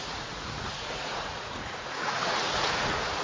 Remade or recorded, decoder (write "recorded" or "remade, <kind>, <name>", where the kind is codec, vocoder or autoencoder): remade, vocoder, Vocos